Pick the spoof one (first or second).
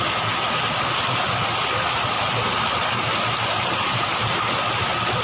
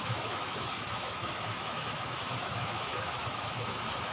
second